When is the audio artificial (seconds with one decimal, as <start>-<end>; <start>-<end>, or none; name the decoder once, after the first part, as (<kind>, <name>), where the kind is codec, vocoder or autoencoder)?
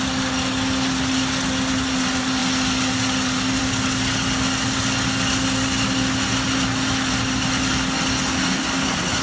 none